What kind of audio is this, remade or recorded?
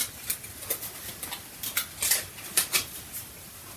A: recorded